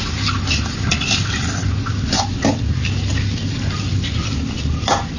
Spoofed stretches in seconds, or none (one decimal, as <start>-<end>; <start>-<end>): none